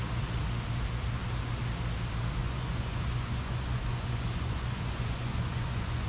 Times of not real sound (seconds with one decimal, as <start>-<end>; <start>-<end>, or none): 2.4-6.1